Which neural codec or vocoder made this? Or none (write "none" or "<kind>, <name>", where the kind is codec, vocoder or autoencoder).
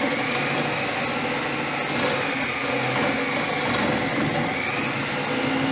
none